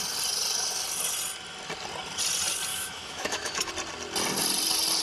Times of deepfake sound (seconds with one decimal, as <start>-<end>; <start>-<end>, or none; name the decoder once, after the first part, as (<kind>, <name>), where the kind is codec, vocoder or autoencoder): 2.7-3.7 (autoencoder, DAC-VAE)